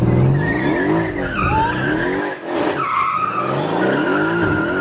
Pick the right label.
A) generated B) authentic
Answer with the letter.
B